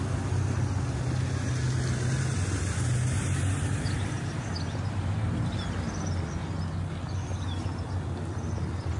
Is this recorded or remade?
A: recorded